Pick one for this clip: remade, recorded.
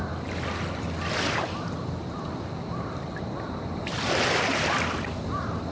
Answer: recorded